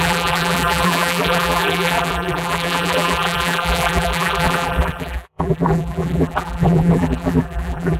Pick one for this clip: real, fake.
fake